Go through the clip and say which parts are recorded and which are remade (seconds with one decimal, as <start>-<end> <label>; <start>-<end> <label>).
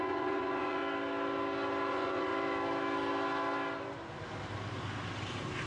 0.0-0.8 remade; 0.8-1.9 recorded; 1.9-2.3 remade; 2.3-5.7 recorded